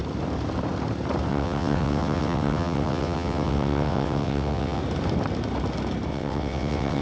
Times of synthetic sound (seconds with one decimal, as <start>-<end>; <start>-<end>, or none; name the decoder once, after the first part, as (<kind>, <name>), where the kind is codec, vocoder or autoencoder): 1.3-4.8 (vocoder, WaveNeXt); 6.1-7.0